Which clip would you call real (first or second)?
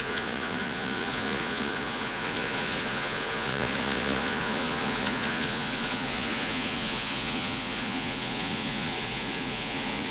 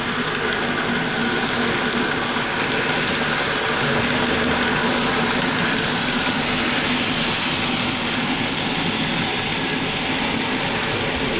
second